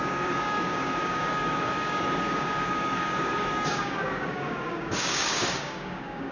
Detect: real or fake fake